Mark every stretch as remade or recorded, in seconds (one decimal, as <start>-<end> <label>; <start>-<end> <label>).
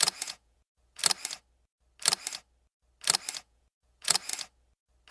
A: 0.0-1.0 remade; 1.0-3.4 recorded; 3.4-4.3 remade; 4.3-5.1 recorded